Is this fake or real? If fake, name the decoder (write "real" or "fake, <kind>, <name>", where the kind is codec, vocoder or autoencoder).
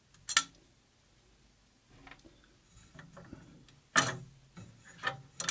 real